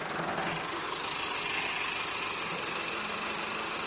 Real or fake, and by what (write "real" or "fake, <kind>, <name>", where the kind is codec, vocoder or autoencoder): real